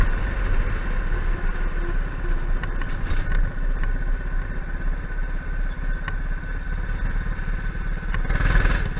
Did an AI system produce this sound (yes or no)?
no